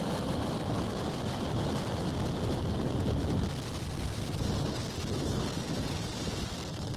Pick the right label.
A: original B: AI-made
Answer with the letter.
A